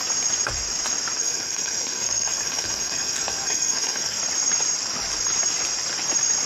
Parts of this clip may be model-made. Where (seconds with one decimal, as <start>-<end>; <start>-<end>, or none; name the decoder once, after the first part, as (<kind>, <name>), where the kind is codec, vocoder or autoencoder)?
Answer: 1.2-4.2 (codec, SNAC)